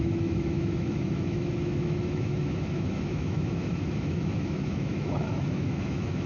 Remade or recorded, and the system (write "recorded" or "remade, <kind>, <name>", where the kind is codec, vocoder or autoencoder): remade, autoencoder, DAC-VAE